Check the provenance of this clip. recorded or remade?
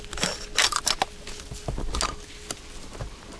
recorded